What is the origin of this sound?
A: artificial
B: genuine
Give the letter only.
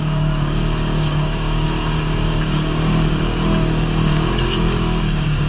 A